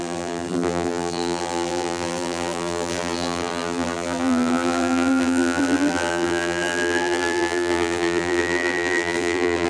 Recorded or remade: remade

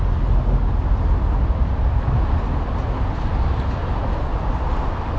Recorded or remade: recorded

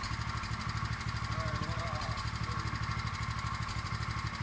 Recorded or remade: recorded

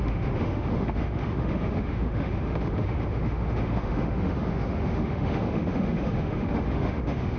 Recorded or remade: remade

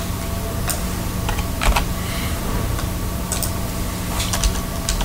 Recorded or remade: recorded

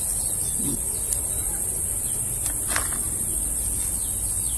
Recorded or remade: recorded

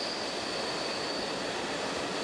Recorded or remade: recorded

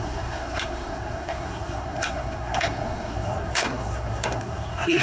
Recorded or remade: remade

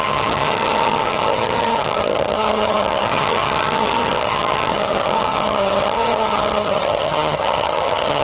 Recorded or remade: remade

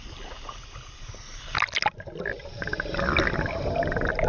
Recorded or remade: recorded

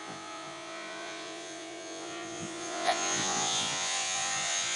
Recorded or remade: remade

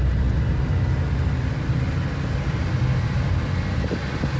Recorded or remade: recorded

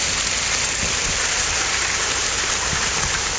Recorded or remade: recorded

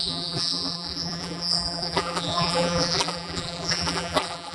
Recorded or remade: remade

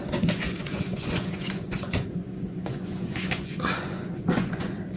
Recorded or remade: remade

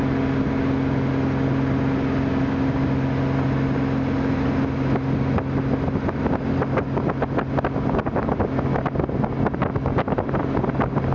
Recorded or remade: recorded